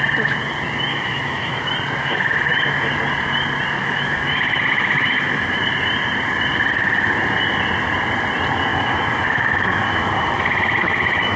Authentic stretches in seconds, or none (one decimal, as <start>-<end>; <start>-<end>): 0.0-0.9; 1.6-2.0; 2.9-3.8; 5.6-8.7